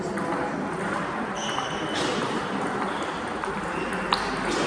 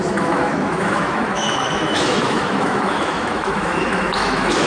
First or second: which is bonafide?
first